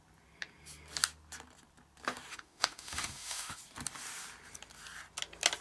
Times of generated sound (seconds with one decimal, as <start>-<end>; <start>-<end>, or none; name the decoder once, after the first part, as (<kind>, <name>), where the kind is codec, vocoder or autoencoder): 2.3-3.6 (autoencoder, DAC-VAE)